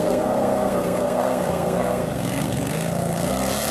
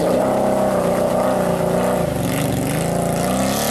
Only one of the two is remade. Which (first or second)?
first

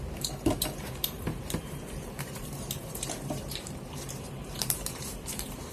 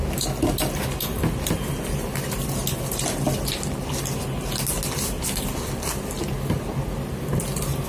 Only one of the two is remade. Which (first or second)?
first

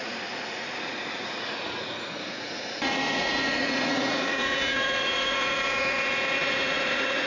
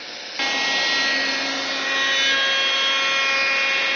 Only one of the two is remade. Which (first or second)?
first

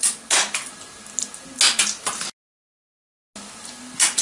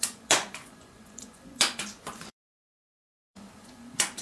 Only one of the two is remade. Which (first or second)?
second